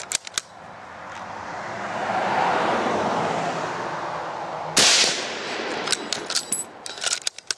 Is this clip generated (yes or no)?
no